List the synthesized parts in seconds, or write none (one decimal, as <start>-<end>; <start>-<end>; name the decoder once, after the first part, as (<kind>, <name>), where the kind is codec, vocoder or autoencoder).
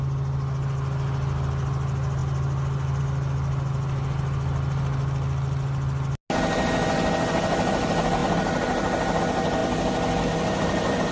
none